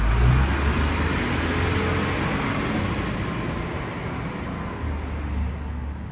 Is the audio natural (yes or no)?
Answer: yes